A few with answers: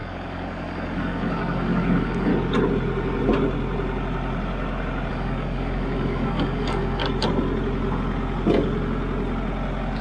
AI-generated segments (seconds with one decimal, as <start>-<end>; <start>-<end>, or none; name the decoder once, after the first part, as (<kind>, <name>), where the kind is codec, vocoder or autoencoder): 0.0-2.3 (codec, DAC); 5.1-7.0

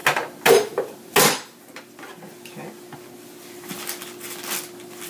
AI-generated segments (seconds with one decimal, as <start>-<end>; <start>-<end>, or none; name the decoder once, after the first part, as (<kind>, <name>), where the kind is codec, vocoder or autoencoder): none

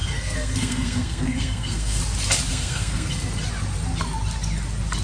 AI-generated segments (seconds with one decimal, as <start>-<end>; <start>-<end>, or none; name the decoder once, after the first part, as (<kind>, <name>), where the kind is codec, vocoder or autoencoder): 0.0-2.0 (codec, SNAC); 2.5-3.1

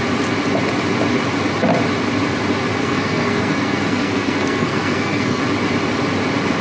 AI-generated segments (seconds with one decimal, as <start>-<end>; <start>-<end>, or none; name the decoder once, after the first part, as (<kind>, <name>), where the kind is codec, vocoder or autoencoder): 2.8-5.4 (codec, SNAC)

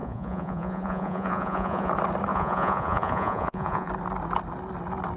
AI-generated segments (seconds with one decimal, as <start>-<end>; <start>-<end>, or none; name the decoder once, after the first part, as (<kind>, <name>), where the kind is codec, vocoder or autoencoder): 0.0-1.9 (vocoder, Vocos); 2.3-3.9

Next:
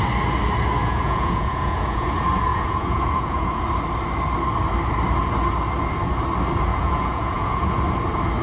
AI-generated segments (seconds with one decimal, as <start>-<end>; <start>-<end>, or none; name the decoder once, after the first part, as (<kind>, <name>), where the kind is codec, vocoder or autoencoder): 0.8-2.1 (vocoder, Vocos); 2.5-3.6; 6.7-7.8

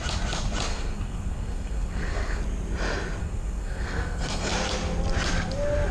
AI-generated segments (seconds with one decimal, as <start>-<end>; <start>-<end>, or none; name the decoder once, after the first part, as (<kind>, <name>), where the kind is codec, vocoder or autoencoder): 0.7-2.4 (codec, SNAC); 3.2-4.5

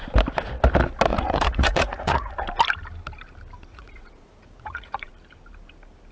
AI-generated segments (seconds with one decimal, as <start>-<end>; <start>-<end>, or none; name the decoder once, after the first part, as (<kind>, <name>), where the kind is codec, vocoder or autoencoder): 1.1-2.3 (vocoder, Vocos); 3.7-5.1